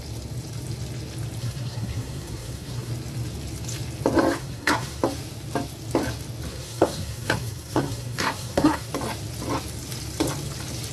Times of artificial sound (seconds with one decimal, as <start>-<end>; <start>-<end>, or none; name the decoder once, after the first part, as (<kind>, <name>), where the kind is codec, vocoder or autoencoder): 1.4-2.9 (codec, SNAC); 4.4-5.0; 6.5-8.9